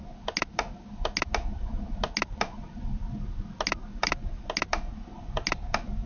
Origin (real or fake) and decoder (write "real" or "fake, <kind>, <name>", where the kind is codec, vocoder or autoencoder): real